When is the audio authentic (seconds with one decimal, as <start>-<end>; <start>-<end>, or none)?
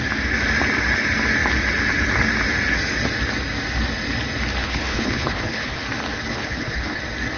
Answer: 0.0-4.6; 5.8-6.3; 7.0-7.4